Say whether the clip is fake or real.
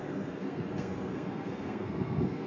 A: fake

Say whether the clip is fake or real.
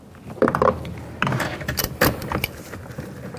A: real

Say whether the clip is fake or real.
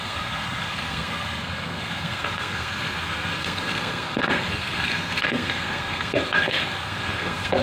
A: fake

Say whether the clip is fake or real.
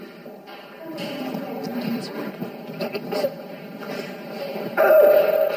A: real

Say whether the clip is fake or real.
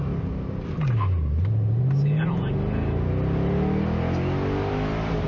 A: real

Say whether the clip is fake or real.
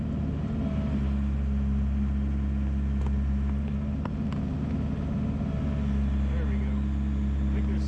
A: real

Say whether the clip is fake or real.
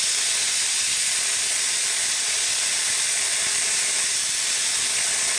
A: real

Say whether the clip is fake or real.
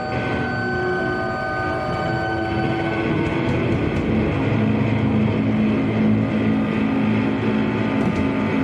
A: real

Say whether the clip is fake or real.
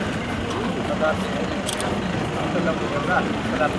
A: real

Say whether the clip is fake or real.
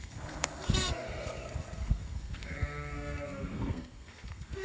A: fake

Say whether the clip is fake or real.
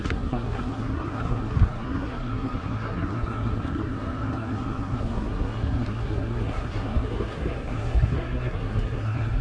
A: fake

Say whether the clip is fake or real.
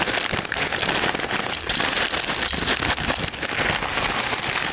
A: real